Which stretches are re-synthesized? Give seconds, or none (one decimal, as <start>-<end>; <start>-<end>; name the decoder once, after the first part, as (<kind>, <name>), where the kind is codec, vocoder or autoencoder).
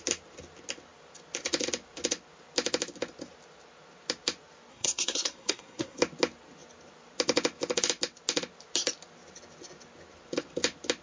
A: 4.7-6.0 (codec, SNAC)